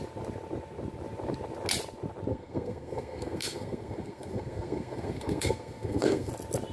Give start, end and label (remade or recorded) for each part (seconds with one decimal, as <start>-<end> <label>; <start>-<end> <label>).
0.0-2.3 recorded; 2.3-6.3 remade; 6.3-6.7 recorded